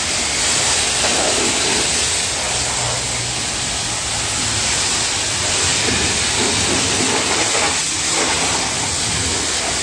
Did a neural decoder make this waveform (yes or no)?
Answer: no